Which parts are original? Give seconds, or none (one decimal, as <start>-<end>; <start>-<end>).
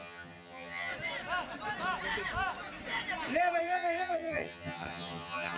0.9-3.6